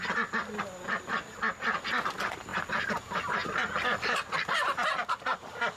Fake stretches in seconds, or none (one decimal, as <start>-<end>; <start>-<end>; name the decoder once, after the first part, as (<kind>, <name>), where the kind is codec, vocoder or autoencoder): none